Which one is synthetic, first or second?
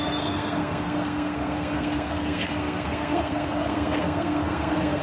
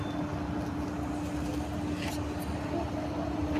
first